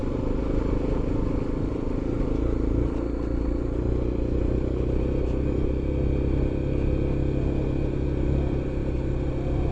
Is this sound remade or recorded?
recorded